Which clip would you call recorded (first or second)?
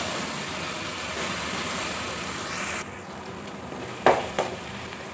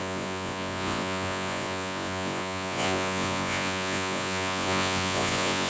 first